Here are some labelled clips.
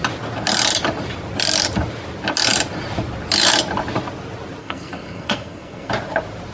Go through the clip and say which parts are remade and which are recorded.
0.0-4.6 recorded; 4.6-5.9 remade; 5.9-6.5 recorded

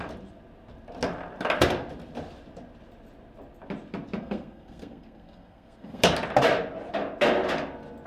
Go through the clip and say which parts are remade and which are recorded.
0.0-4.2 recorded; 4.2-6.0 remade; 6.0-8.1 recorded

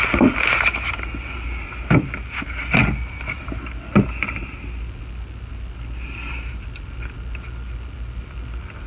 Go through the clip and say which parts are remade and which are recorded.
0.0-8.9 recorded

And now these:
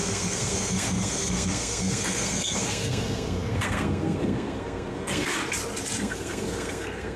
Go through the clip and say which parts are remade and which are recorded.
0.0-5.4 remade; 5.4-6.0 recorded; 6.0-7.2 remade

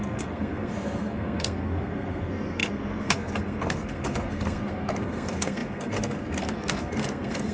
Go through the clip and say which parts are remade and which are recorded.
0.0-7.5 remade